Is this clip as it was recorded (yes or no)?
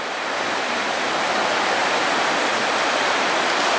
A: yes